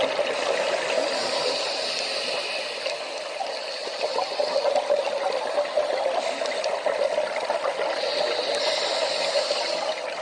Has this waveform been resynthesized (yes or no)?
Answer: no